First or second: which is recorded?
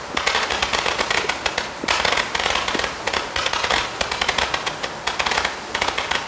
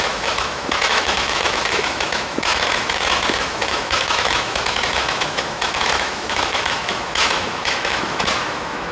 first